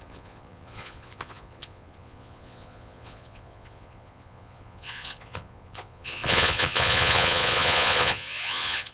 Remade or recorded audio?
remade